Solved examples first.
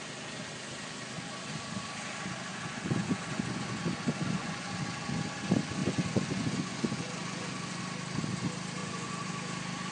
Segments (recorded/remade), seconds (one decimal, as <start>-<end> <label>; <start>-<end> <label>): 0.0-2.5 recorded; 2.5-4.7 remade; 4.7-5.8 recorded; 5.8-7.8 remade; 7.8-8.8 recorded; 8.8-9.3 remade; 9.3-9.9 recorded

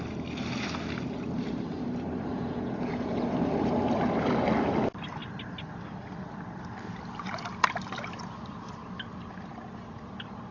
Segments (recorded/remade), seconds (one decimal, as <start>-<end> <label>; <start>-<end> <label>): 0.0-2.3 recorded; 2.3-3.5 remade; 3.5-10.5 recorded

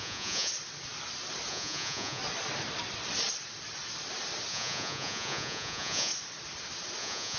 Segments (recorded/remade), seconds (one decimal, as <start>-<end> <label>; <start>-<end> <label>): 0.0-0.5 remade; 0.5-1.5 recorded; 1.5-2.2 remade; 2.2-4.5 recorded; 4.5-6.1 remade; 6.1-7.0 recorded; 7.0-7.4 remade

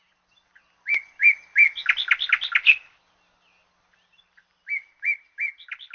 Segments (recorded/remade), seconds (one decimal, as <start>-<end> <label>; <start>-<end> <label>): 0.0-5.9 recorded

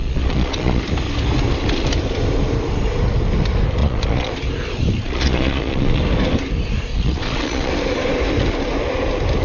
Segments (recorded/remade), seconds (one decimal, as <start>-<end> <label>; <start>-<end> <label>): 0.0-0.8 remade; 0.8-3.8 recorded; 3.8-4.3 remade; 4.3-5.0 recorded; 5.0-6.0 remade; 6.0-6.9 recorded; 6.9-7.7 remade; 7.7-9.4 recorded